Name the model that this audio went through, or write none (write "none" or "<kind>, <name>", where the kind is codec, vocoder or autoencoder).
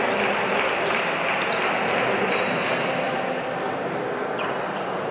none